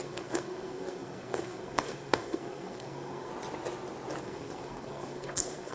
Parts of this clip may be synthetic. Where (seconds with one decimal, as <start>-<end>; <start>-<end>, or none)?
0.0-3.3; 4.2-5.7